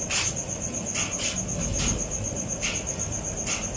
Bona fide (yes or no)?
yes